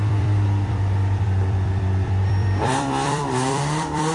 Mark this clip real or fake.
fake